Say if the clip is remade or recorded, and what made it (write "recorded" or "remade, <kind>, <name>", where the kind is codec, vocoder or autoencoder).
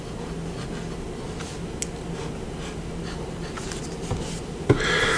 recorded